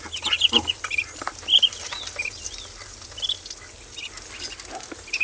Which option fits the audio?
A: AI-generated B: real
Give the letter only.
B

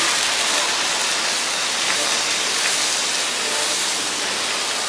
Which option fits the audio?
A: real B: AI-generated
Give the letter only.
A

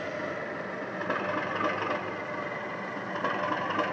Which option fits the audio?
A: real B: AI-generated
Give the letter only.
A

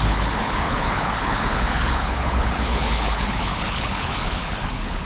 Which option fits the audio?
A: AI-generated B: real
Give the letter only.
A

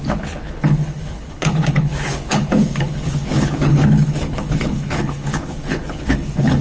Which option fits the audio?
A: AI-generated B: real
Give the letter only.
A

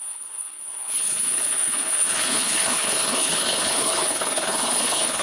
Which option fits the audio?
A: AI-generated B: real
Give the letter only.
A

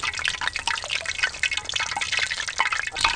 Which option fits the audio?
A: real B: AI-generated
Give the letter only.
A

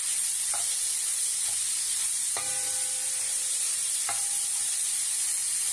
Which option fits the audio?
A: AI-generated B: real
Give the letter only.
B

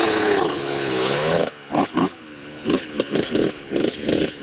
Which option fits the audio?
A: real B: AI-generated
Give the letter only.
B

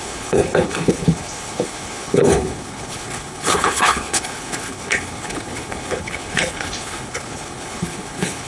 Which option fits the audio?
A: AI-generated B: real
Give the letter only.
A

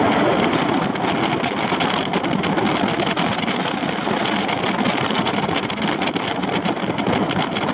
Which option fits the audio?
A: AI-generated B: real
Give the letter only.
B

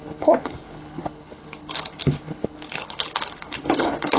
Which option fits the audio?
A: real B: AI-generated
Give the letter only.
B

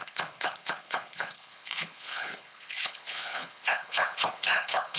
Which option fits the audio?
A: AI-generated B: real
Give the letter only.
A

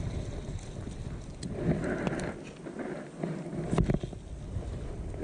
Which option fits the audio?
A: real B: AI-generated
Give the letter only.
A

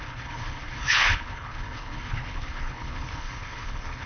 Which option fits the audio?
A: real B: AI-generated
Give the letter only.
B